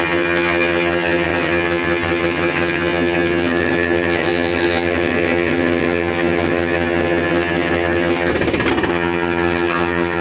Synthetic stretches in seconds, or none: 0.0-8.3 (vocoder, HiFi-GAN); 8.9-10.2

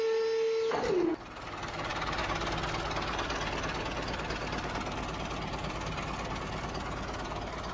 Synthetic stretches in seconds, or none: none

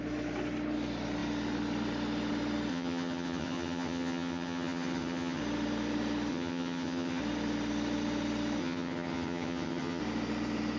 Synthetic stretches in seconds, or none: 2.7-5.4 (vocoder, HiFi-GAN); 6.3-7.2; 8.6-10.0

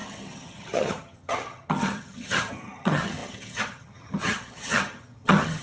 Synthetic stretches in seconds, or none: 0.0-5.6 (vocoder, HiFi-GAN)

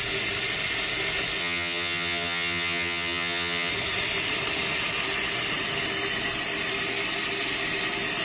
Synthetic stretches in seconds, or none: 1.4-3.7 (vocoder, HiFi-GAN)